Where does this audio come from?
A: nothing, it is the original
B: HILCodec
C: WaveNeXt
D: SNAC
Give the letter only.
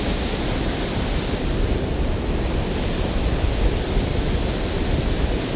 A